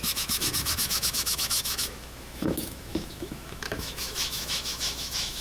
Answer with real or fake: fake